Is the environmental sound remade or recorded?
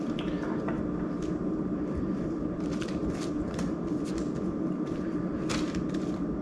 recorded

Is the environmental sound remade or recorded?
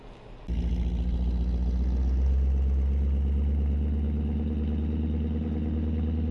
recorded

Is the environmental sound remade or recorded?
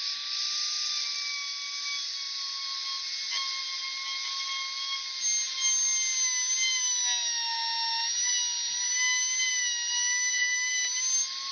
recorded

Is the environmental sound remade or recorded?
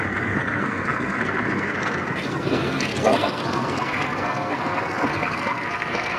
remade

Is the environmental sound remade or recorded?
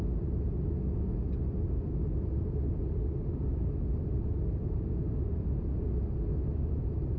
recorded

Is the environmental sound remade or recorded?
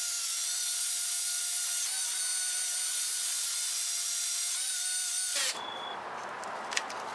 recorded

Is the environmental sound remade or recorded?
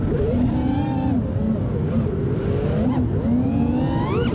recorded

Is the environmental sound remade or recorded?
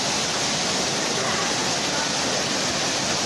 recorded